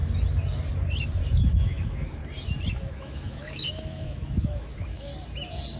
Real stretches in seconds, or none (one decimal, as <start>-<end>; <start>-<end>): 0.0-1.4; 2.2-2.7; 5.1-5.8